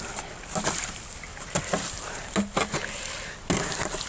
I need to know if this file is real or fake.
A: real